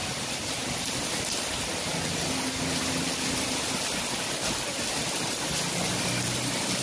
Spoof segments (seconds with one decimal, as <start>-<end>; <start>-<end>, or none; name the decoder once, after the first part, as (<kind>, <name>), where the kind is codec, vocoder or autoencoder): none